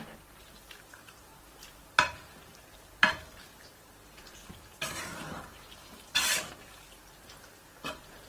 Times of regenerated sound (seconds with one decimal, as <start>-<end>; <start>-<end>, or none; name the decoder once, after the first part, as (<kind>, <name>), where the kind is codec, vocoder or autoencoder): 0.0-8.3 (vocoder, BigVGAN v2)